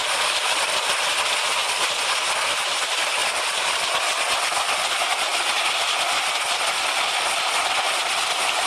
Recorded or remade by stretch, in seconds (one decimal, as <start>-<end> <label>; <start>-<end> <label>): 0.0-1.9 remade; 1.9-3.2 recorded; 3.2-3.8 remade; 3.8-8.7 recorded